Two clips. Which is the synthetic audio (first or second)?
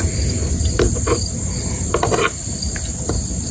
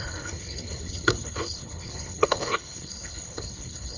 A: second